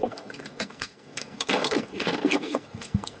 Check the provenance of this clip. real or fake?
fake